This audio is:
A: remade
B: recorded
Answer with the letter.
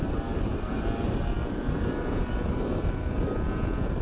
B